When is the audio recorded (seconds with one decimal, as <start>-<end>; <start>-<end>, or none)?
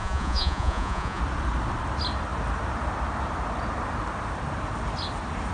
1.2-5.5